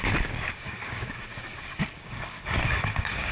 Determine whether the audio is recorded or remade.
remade